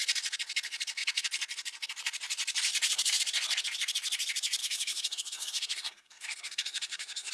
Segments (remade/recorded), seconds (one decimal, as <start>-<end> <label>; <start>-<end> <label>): 0.0-4.6 recorded; 4.6-7.3 remade